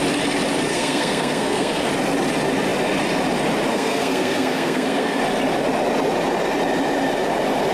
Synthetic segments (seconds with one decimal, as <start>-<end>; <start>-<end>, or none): 0.7-1.9; 3.7-5.2